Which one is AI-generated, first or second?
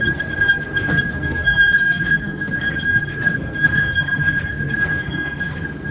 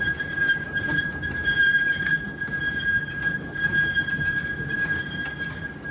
first